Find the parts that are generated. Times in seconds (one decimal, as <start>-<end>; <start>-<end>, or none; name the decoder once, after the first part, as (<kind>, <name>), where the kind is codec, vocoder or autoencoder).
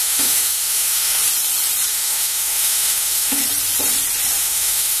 0.0-1.2 (autoencoder, DAC-VAE); 1.9-3.4; 4.4-5.0